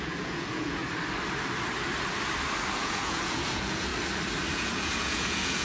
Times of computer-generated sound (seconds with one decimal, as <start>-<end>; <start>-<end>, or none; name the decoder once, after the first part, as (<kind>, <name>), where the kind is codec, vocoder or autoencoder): 0.0-0.8 (vocoder, Vocos); 2.8-3.9; 4.5-5.6